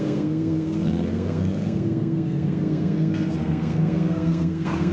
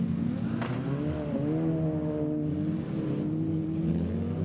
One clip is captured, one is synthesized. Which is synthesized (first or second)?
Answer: first